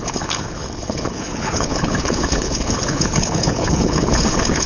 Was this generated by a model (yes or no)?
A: yes